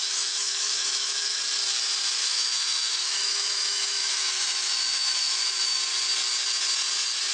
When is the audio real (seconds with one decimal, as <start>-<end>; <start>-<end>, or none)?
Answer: 1.4-2.2; 5.8-7.3